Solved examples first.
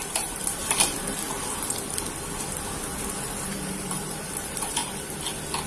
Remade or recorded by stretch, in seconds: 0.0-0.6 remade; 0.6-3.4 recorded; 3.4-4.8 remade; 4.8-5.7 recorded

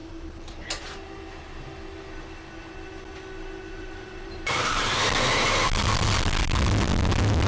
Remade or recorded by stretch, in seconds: 0.0-0.8 remade; 0.8-3.7 recorded; 3.7-5.0 remade; 5.0-7.5 recorded

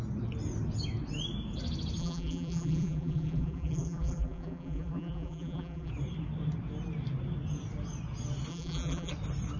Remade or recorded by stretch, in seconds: 0.0-2.0 recorded; 2.0-5.9 remade; 5.9-8.5 recorded; 8.5-9.1 remade; 9.1-9.6 recorded